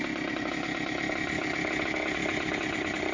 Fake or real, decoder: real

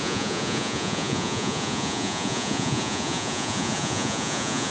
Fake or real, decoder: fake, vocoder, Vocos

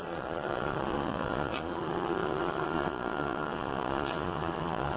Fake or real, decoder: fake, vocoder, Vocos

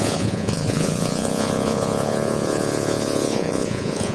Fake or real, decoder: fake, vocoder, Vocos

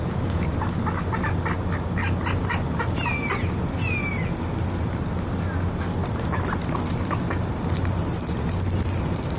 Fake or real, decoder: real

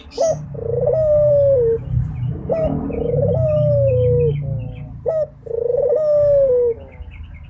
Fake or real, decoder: real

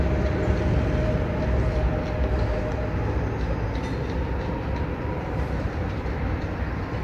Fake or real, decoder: real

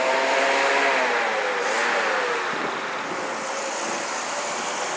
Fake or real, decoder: real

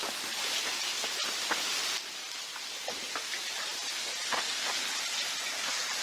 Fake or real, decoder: real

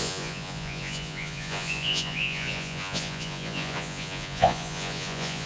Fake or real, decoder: fake, vocoder, Vocos